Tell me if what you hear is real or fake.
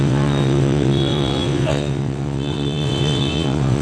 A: fake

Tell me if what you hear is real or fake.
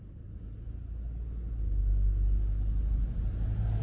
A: real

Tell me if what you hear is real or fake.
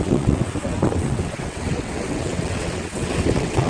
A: fake